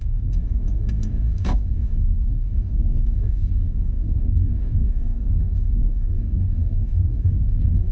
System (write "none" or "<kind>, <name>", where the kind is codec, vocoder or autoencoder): codec, DAC